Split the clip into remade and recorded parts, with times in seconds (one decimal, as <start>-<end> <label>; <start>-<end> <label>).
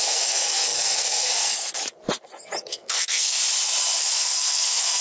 0.0-1.8 remade; 1.8-2.6 recorded; 2.6-3.4 remade; 3.4-4.0 recorded; 4.0-5.0 remade